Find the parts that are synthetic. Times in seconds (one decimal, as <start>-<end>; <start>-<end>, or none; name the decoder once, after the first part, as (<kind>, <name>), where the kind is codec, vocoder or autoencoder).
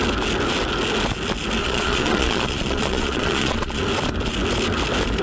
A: 1.6-3.8 (vocoder, Vocos)